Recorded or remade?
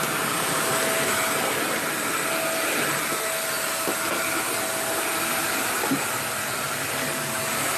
recorded